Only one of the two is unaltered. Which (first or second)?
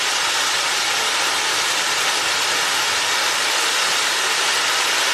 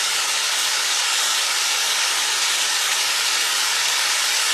first